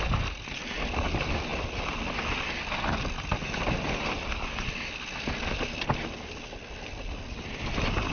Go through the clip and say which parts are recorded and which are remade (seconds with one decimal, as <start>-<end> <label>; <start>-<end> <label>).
0.0-8.1 recorded